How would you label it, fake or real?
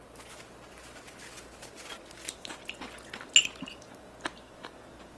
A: real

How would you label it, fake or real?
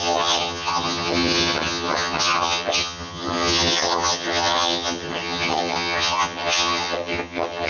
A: fake